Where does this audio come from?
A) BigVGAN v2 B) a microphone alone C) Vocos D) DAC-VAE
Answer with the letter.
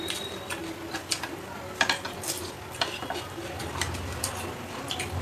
A